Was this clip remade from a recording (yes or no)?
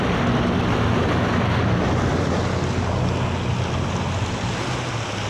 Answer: no